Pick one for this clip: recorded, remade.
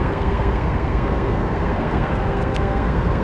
remade